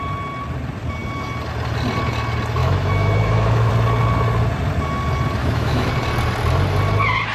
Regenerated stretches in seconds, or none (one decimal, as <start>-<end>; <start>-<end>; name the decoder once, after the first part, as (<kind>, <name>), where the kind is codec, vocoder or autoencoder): 2.6-3.7 (autoencoder, DAC-VAE); 5.4-5.9